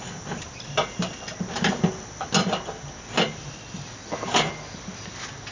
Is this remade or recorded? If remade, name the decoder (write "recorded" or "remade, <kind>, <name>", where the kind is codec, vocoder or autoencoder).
recorded